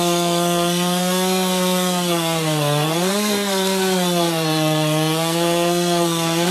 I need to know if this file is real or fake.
fake